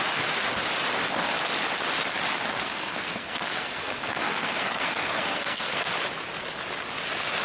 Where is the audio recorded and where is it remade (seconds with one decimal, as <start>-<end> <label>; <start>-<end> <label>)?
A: 0.0-2.5 recorded; 2.5-5.9 remade; 5.9-7.4 recorded

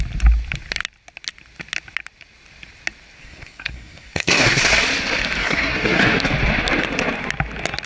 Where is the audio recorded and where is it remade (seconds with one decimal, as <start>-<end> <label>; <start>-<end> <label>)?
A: 0.0-3.2 recorded; 3.2-4.6 remade; 4.6-5.4 recorded; 5.4-6.0 remade; 6.0-7.9 recorded